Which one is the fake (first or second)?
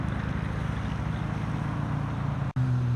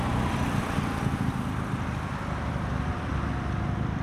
second